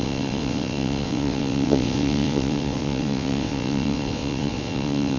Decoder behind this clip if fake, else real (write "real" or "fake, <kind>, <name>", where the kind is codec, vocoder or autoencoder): fake, vocoder, WaveNeXt